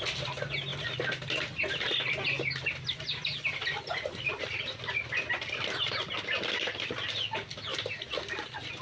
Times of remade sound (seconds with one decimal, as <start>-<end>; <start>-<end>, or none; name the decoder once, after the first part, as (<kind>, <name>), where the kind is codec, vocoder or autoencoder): none